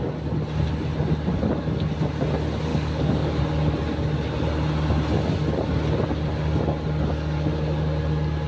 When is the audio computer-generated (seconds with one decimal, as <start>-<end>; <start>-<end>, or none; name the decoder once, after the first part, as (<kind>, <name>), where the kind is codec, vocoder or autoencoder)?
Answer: 2.7-3.4 (codec, DAC)